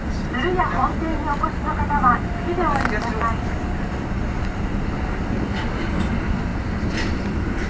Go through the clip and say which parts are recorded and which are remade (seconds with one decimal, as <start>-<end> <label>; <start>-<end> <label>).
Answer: 0.0-6.5 recorded; 6.5-7.2 remade; 7.2-7.7 recorded